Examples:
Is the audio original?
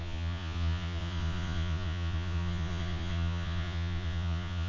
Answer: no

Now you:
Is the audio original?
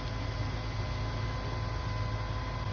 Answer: yes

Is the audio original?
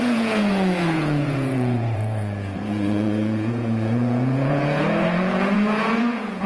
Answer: no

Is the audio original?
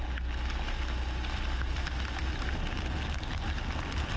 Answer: yes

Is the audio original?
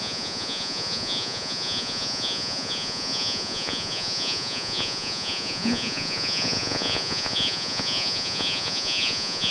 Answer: no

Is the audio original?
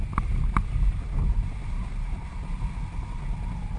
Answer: yes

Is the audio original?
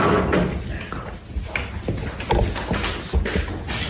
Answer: yes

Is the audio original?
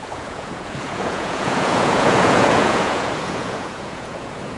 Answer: no